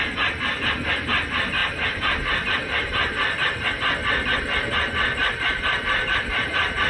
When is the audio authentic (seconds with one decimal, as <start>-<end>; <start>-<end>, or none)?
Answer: 0.0-1.6; 3.7-5.2